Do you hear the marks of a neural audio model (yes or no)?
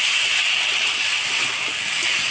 no